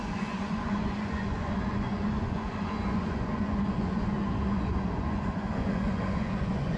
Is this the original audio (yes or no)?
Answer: no